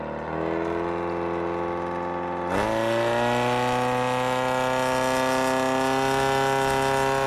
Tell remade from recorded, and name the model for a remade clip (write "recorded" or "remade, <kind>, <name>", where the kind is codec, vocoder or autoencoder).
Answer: recorded